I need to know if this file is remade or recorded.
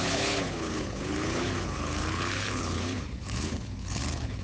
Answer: remade